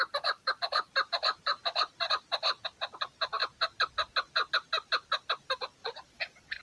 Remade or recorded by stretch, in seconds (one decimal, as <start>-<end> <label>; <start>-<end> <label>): 0.0-5.8 recorded; 5.8-6.6 remade